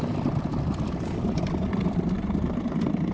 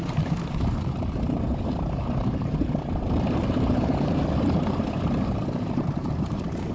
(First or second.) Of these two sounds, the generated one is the second